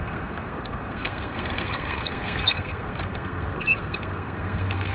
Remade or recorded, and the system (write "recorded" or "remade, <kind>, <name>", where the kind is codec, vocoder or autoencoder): remade, codec, SNAC